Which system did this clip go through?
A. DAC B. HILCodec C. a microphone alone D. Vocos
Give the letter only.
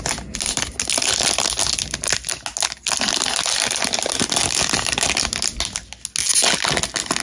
C